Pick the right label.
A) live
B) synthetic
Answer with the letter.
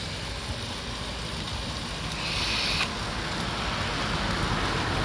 A